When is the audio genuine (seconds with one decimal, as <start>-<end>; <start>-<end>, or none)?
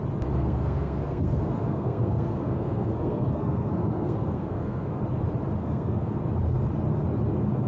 0.0-0.4; 5.0-5.6; 6.1-7.7